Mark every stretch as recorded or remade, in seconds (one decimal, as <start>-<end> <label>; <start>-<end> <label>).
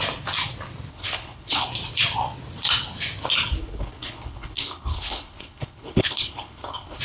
0.0-0.9 recorded; 0.9-1.7 remade; 1.7-3.6 recorded; 3.6-7.0 remade